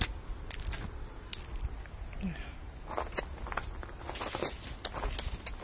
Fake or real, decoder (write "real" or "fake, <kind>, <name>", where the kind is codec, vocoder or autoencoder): real